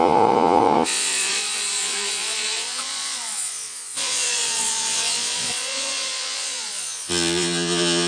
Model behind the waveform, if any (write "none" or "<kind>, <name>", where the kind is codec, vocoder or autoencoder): vocoder, Vocos